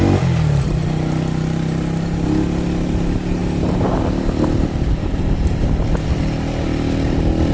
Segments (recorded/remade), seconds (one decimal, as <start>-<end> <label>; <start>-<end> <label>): 0.0-7.5 recorded